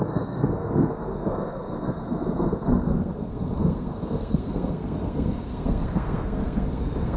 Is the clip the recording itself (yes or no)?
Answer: no